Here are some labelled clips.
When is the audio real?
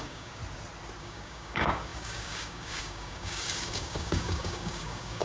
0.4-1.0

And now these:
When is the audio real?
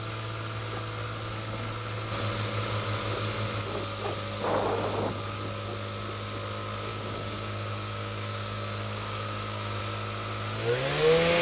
0.0-6.9; 9.8-11.4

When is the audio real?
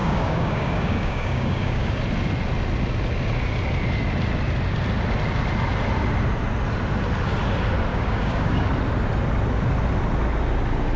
1.9-7.9; 8.7-11.0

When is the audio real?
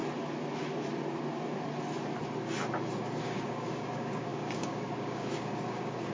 0.0-3.2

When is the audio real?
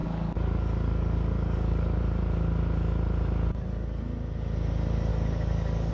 2.0-5.1